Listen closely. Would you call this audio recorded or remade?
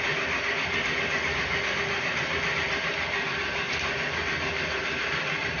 recorded